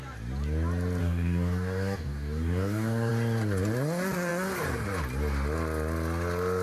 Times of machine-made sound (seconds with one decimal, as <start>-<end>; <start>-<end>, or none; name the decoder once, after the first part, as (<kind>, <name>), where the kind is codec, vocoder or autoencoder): 1.0-3.1 (codec, DAC)